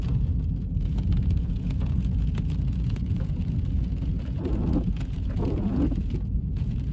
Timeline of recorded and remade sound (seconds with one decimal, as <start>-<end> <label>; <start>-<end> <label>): 0.0-6.9 remade